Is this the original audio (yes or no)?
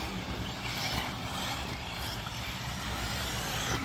no